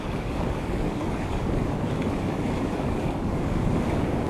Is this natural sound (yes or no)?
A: no